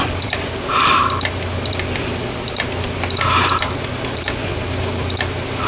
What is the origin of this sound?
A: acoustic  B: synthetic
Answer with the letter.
B